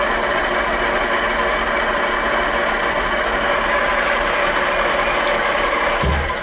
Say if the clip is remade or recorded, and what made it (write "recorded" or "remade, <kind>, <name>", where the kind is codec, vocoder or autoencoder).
recorded